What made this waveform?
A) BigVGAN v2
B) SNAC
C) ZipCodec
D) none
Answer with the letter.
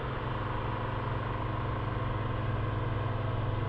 D